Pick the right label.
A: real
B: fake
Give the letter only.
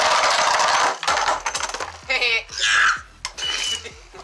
A